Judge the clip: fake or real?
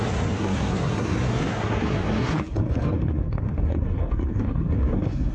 fake